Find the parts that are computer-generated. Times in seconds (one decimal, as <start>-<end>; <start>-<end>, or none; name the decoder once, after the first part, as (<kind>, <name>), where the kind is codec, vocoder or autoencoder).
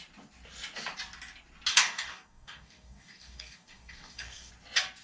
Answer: 1.7-4.5 (codec, DAC)